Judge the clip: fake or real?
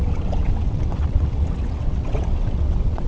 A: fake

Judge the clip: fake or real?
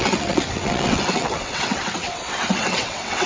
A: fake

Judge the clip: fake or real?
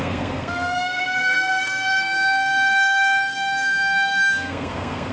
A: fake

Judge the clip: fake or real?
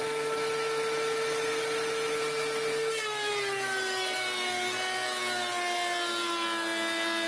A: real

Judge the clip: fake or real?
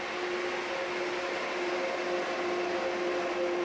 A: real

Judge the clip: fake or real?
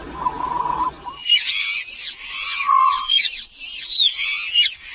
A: real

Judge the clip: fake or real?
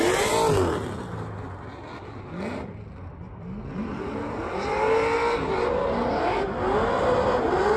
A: real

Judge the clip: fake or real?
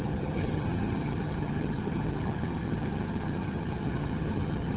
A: fake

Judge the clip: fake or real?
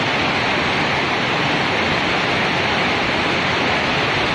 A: real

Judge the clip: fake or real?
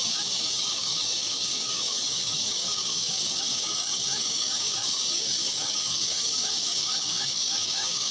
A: fake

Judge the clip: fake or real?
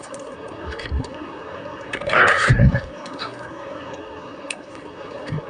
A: fake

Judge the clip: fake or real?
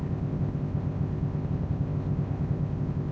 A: fake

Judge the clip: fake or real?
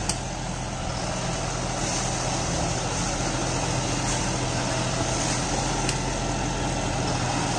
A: real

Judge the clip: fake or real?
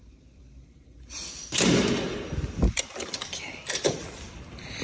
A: fake